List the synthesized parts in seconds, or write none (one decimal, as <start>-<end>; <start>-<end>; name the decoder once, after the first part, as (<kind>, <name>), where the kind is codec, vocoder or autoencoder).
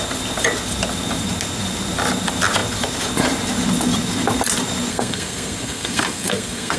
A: 4.9-6.8 (codec, SNAC)